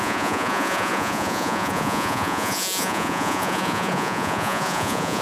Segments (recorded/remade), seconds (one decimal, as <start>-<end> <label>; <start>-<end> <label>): 0.0-5.2 remade